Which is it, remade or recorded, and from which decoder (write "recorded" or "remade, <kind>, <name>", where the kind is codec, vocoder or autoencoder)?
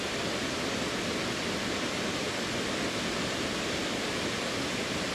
recorded